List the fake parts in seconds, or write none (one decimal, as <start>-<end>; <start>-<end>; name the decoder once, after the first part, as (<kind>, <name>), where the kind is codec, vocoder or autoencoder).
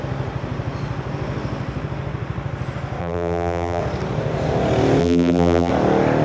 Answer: 3.0-3.8 (vocoder, BigVGAN v2); 5.0-5.7